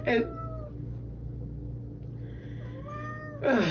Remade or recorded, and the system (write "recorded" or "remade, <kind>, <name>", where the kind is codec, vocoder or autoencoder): recorded